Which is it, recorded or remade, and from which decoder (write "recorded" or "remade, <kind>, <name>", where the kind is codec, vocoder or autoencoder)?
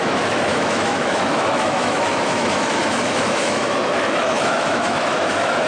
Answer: remade, autoencoder, DAC-VAE